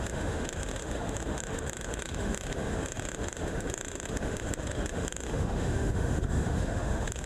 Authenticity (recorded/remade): remade